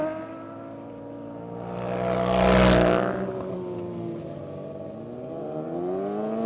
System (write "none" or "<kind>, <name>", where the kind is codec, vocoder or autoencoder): none